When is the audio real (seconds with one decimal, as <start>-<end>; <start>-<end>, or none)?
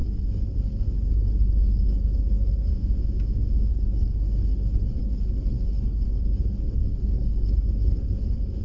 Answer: 2.7-3.7